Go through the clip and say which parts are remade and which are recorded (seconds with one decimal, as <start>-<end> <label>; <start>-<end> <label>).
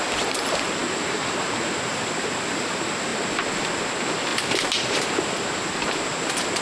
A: 0.0-6.6 recorded